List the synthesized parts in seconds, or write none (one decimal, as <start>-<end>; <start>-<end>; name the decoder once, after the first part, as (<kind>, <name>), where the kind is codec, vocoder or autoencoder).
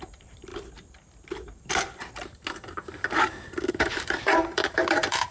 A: 0.0-0.5 (vocoder, BigVGAN v2); 3.7-5.3